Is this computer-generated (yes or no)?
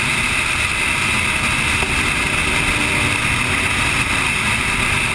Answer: no